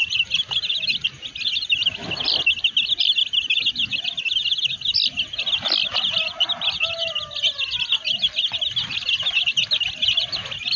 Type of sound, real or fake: real